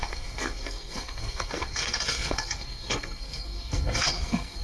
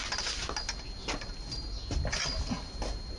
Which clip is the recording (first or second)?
second